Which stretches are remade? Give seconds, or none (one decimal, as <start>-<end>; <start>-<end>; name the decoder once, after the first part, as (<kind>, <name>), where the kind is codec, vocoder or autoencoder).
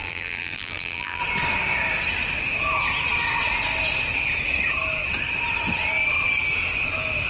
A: 0.0-1.2 (vocoder, BigVGAN v2)